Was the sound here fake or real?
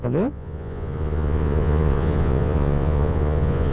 fake